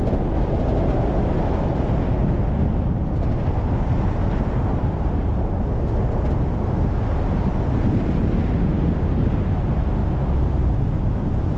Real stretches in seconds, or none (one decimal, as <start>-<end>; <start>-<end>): 0.0-4.7; 5.7-10.0